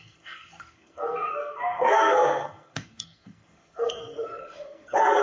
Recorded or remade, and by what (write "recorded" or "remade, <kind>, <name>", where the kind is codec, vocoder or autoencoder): remade, codec, SNAC